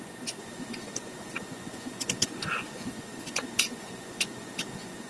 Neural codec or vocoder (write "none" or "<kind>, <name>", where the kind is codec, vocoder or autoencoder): vocoder, Vocos